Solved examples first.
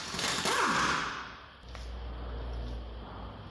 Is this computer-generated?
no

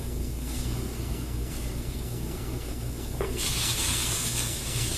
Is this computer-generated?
yes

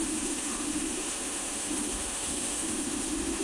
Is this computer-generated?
yes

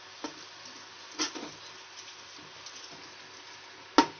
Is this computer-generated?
no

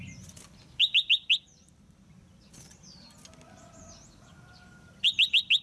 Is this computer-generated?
no